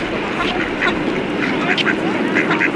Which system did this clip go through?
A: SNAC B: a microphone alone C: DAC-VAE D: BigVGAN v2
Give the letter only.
B